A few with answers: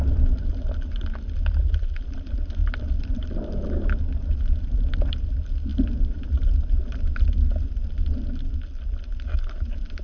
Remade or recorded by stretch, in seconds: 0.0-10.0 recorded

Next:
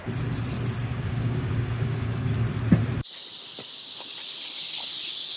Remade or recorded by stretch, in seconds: 0.0-0.8 recorded; 0.8-2.3 remade; 2.3-5.4 recorded

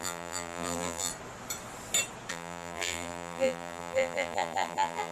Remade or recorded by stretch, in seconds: 0.0-1.1 remade; 1.1-2.3 recorded; 2.3-5.1 remade

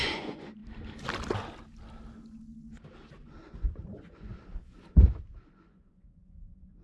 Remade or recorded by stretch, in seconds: 0.0-0.6 remade; 0.6-3.2 recorded; 3.2-4.3 remade; 4.3-5.5 recorded; 5.5-6.8 remade

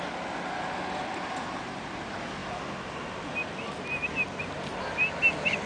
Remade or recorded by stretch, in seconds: 0.0-5.7 recorded

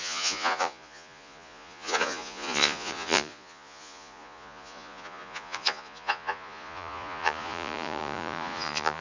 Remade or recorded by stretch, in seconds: 0.0-9.0 remade

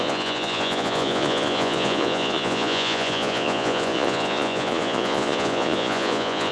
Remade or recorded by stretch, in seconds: 0.0-6.5 remade